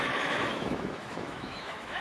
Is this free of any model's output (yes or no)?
no